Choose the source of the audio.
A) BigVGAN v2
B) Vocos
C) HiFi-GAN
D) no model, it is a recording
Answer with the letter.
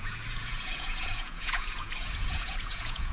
B